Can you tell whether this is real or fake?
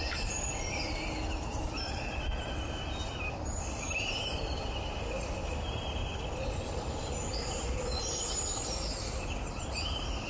real